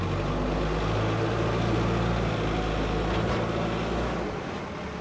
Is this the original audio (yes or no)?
yes